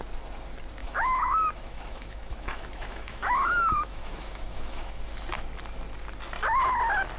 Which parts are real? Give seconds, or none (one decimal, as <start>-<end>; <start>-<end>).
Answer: 0.0-0.8; 5.1-7.2